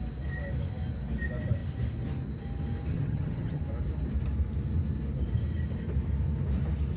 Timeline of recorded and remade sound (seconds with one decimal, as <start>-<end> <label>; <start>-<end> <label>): 0.0-2.9 recorded; 2.9-3.6 remade; 3.6-7.0 recorded

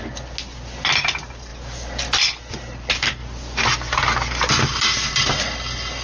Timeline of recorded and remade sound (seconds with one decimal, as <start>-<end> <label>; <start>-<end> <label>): 0.0-6.0 recorded